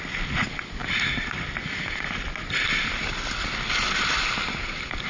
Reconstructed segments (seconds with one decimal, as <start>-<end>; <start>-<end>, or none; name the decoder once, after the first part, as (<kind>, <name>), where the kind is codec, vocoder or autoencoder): none